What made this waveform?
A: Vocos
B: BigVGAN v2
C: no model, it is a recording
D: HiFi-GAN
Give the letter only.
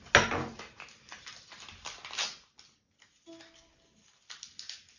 C